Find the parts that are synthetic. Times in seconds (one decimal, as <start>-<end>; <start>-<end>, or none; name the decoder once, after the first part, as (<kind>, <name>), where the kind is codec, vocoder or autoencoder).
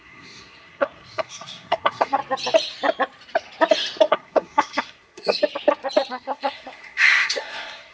0.0-2.2 (codec, SNAC); 4.1-5.4; 6.1-7.9